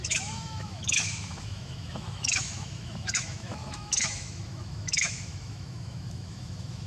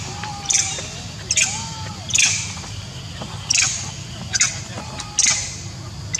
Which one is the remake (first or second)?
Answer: first